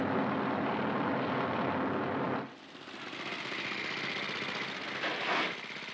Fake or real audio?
real